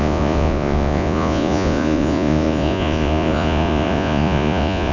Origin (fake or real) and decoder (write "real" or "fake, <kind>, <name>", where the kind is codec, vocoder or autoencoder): fake, vocoder, Vocos